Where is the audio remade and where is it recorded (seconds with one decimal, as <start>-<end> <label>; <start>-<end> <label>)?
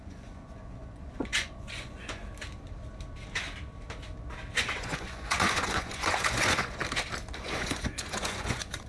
0.0-2.2 remade; 2.2-4.5 recorded; 4.5-6.8 remade; 6.8-7.4 recorded; 7.4-8.9 remade